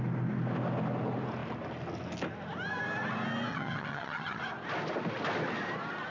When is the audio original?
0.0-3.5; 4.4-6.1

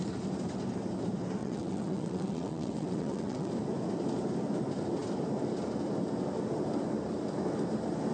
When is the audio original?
0.0-1.4; 3.5-8.1

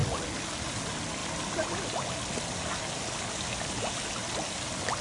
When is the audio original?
0.0-5.0

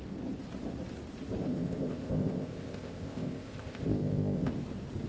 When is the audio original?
0.0-1.4; 4.5-5.1